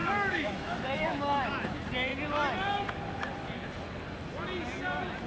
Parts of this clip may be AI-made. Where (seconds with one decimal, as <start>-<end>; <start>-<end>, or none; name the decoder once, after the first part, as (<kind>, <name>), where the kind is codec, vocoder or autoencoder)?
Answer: 0.0-1.5 (autoencoder, DAC-VAE)